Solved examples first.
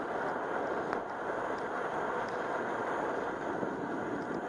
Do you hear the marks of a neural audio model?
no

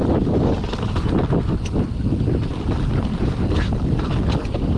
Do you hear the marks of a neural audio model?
no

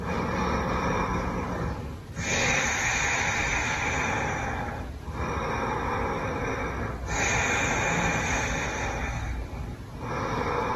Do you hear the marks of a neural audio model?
no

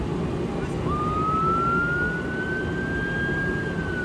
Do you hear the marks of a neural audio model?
no